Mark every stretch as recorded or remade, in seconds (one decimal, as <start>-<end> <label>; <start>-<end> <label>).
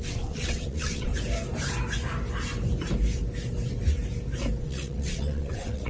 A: 0.0-1.1 remade; 1.1-4.6 recorded; 4.6-5.9 remade